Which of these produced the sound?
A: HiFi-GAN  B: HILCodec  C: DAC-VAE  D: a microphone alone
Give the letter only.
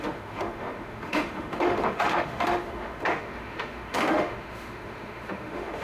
C